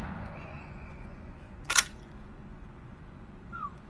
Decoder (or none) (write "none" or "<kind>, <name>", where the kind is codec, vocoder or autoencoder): vocoder, Vocos